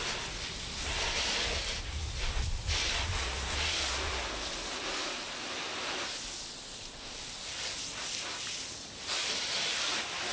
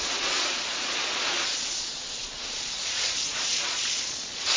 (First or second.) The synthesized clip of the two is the second